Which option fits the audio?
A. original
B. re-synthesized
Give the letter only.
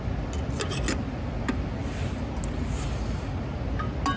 A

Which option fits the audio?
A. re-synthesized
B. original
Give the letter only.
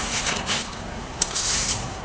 A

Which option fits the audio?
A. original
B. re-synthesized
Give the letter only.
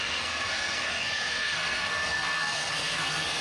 B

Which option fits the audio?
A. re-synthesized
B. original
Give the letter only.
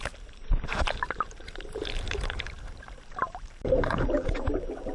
A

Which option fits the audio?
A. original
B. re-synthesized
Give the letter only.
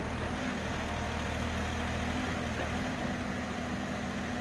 A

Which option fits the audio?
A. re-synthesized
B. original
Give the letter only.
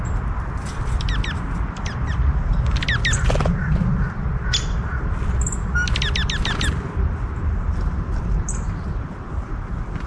B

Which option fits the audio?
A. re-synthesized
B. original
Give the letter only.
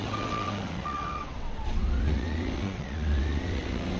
A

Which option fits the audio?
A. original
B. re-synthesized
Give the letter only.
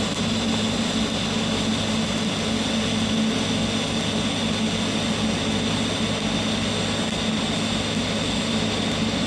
A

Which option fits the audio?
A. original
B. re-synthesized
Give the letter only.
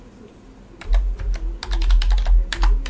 A